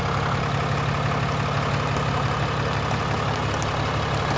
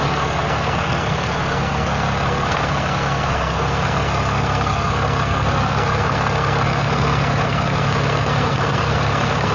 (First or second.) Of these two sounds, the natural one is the first